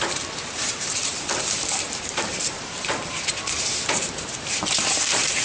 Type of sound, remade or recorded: remade